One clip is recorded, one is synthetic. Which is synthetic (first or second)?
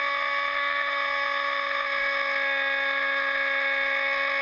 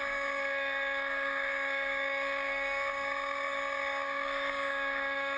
second